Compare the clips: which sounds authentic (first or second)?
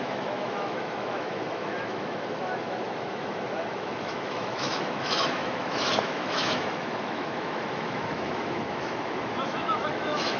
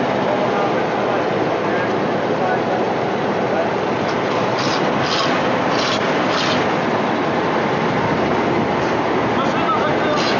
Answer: second